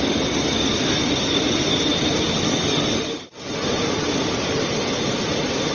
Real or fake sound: real